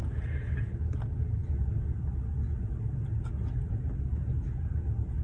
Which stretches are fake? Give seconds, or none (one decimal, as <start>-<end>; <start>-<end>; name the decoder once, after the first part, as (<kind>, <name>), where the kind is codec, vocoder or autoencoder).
none